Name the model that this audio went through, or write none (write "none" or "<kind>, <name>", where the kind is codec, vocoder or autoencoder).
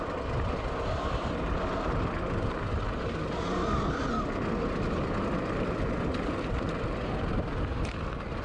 none